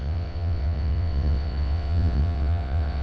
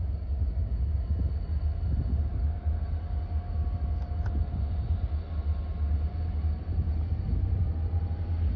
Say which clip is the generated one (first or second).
first